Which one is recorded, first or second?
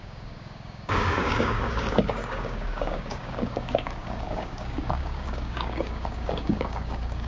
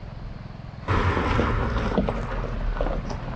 second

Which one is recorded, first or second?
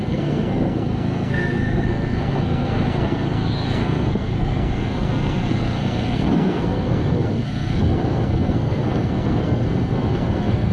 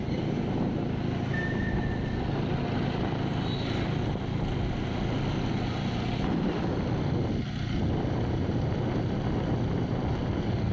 second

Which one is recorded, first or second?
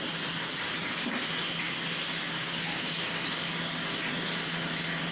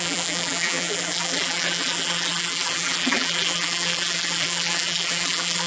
first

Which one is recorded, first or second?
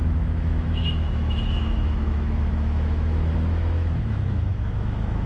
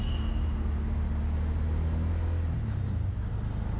second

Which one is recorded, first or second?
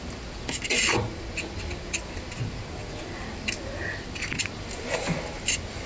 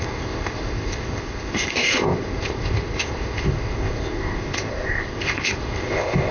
first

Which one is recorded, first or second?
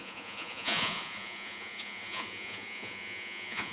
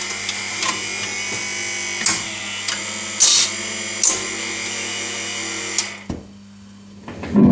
second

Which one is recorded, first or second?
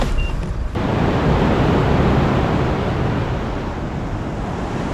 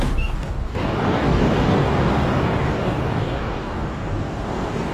first